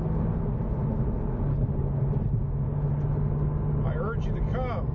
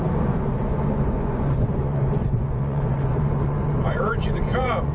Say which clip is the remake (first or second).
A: second